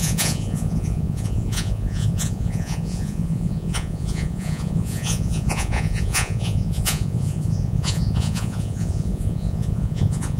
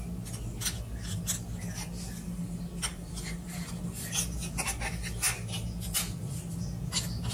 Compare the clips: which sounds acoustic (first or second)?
second